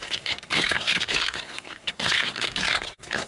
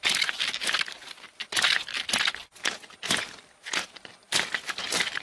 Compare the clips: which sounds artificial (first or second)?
first